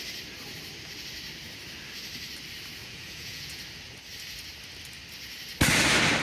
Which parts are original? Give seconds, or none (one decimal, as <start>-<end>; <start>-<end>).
0.0-2.8; 3.6-6.2